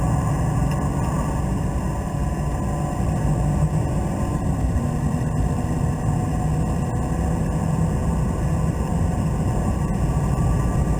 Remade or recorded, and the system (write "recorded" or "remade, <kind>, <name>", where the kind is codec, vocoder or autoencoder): recorded